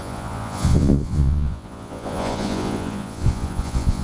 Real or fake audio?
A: fake